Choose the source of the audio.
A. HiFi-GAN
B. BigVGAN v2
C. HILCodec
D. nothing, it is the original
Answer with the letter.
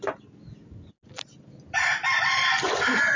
D